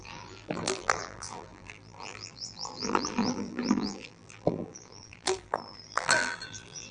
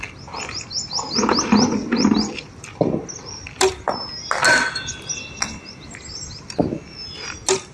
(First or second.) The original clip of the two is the second